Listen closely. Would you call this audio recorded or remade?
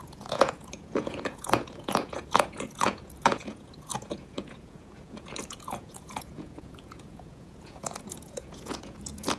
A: remade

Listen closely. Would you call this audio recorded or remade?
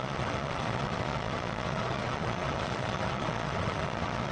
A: remade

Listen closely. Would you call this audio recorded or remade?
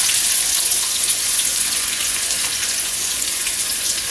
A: remade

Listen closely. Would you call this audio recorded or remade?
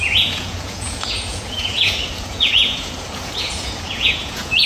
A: remade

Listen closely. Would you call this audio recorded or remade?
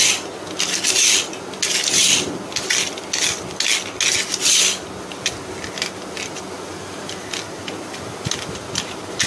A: recorded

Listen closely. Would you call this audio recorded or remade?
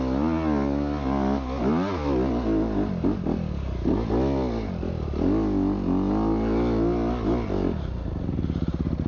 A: recorded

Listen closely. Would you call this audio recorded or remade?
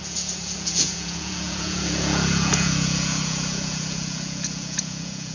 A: remade